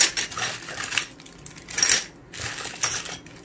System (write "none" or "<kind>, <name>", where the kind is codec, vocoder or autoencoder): none